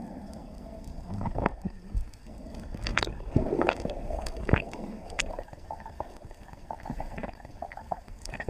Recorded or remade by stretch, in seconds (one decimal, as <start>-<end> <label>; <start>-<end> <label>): 0.0-8.5 remade